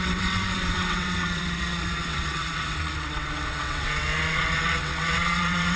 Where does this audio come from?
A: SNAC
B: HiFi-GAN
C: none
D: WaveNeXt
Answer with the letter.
D